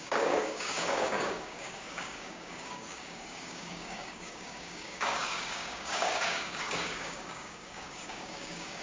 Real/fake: fake